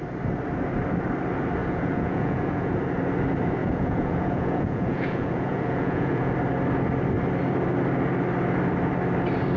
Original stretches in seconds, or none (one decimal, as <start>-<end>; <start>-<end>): 0.0-1.6; 2.8-3.6; 6.3-9.6